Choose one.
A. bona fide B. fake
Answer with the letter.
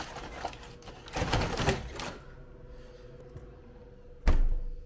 A